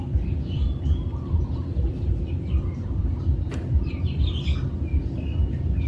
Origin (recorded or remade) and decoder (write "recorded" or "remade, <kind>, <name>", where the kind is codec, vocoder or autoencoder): remade, vocoder, BigVGAN v2